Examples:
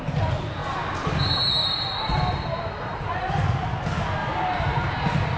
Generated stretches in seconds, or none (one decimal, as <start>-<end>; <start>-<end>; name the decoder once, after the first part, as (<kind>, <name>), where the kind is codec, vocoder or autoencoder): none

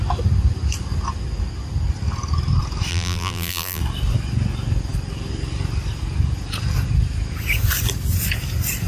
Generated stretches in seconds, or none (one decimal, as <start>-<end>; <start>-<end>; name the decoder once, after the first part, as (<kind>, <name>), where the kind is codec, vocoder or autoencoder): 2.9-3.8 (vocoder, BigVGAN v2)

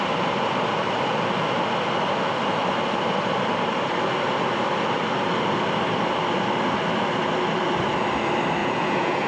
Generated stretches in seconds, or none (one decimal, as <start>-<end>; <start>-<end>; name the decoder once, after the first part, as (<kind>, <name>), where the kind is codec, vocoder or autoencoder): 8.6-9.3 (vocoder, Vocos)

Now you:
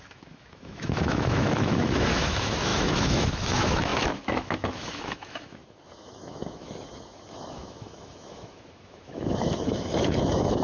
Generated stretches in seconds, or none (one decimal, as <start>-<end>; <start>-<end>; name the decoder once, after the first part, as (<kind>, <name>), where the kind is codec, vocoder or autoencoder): 0.0-10.6 (autoencoder, DAC-VAE)

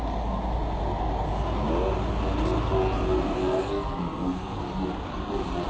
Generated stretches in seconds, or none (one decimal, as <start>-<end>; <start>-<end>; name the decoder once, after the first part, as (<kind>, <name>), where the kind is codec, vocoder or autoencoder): 3.4-4.6 (codec, SNAC)

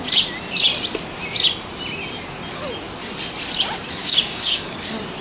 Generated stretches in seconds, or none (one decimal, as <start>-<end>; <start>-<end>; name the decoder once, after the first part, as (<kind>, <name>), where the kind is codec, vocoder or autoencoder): 4.0-4.7 (codec, DAC)

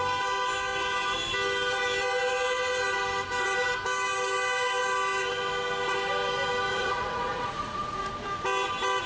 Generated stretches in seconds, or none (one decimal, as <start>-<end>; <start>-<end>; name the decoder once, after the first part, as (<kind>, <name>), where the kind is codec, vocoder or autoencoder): 6.7-8.1 (vocoder, Vocos)